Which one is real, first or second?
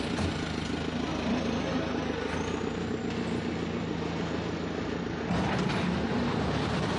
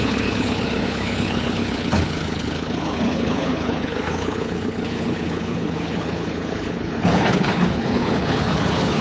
first